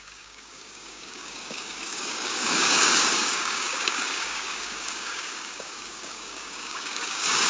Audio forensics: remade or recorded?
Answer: remade